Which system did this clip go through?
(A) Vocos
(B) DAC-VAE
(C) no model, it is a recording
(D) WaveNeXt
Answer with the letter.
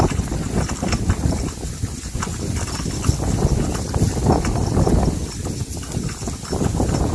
C